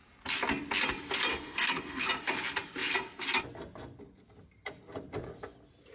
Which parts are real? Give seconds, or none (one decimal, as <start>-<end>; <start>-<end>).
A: 0.0-1.3; 2.1-5.9